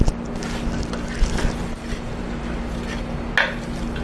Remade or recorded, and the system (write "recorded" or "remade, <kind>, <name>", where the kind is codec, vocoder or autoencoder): recorded